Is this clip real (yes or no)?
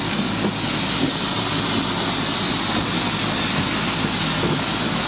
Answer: yes